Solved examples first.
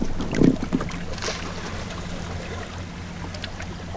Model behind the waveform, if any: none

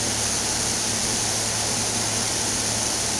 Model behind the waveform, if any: none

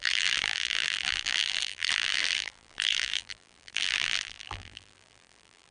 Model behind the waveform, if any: vocoder, BigVGAN v2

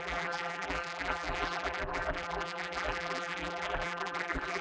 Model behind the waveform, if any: vocoder, BigVGAN v2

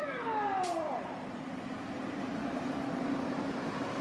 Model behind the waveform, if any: vocoder, BigVGAN v2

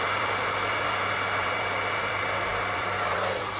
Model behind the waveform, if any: vocoder, BigVGAN v2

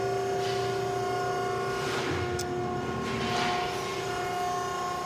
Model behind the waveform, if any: none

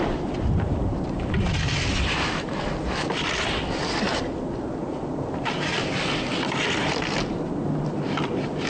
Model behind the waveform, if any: none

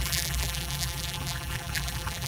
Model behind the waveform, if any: vocoder, BigVGAN v2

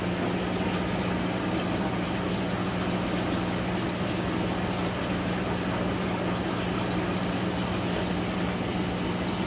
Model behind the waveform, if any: none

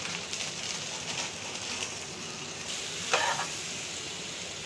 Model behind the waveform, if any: vocoder, BigVGAN v2